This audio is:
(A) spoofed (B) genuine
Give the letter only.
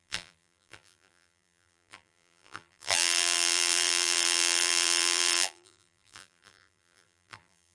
A